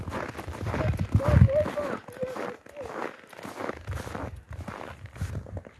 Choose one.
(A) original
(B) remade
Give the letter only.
A